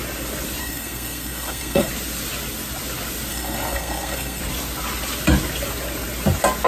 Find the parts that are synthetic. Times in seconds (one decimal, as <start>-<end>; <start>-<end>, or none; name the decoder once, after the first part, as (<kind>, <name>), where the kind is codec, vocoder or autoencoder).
0.6-1.9 (codec, SNAC); 3.3-4.4